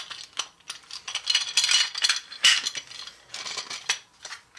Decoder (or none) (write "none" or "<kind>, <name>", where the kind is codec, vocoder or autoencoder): none